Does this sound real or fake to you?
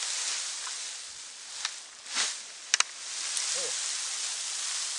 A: real